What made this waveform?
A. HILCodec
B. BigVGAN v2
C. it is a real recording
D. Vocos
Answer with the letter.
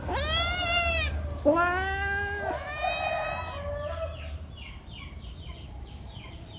C